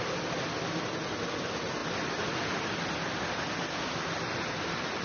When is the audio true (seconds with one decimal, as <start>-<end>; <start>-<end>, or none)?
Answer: 0.0-5.0